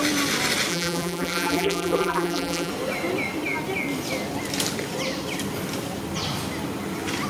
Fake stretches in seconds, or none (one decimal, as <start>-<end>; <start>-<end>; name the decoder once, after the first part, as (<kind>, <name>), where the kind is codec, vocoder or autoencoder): 0.7-2.7 (vocoder, BigVGAN v2)